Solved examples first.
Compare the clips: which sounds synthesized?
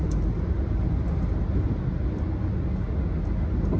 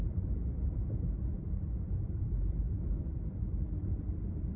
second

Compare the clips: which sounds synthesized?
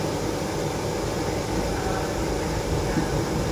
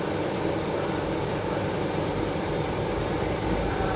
second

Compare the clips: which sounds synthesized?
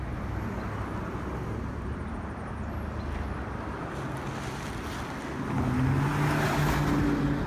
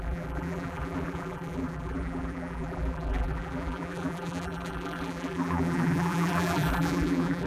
second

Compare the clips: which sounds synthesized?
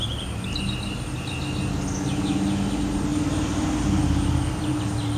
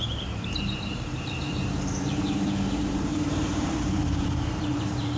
second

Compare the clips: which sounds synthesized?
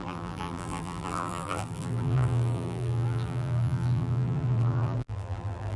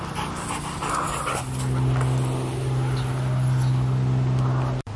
first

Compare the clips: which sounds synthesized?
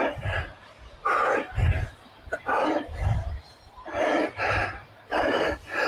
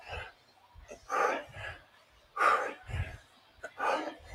first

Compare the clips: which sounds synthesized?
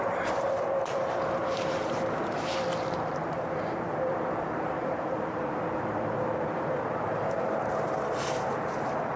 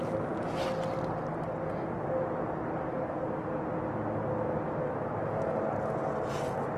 first